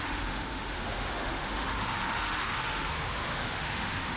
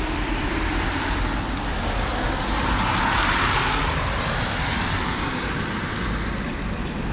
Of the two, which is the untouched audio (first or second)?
second